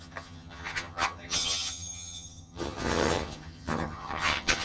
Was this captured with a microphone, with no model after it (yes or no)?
no